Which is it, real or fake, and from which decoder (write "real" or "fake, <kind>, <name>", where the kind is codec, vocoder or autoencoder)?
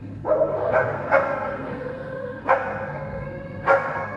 fake, codec, SNAC